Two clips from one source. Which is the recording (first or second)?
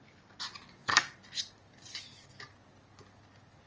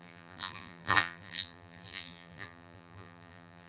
first